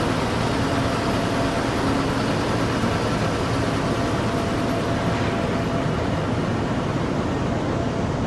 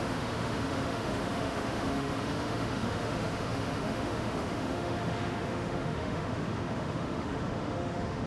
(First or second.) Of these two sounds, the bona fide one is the first